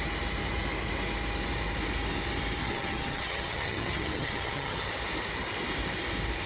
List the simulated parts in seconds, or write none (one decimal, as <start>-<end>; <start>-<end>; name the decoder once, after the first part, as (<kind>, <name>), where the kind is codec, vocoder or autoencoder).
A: 2.6-4.9 (vocoder, HiFi-GAN)